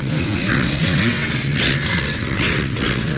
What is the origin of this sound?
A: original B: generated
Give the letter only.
B